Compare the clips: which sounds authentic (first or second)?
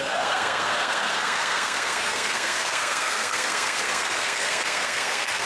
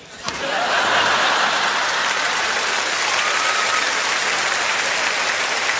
second